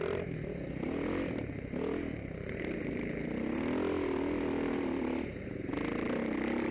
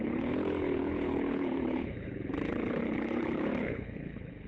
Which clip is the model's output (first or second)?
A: second